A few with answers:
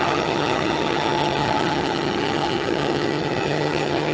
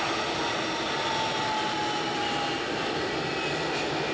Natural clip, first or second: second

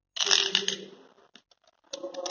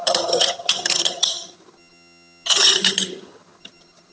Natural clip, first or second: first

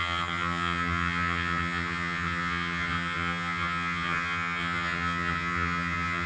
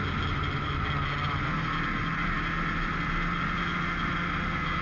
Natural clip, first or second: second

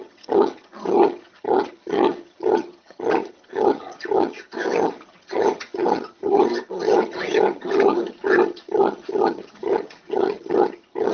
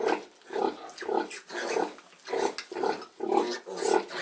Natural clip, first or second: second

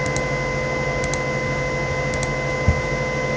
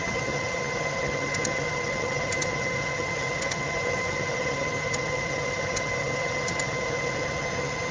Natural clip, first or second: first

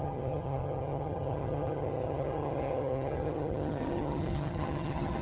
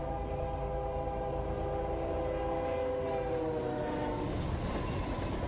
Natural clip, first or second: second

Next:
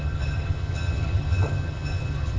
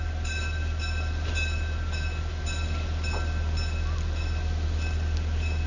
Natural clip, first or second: second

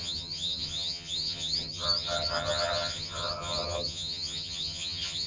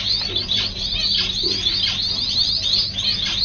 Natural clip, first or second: second